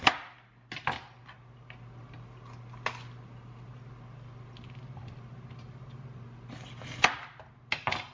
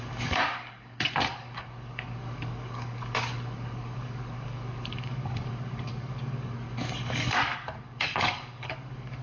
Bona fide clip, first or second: first